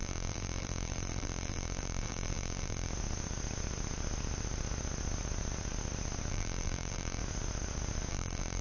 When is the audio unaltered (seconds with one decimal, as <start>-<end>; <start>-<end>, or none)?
2.9-6.3; 7.2-8.1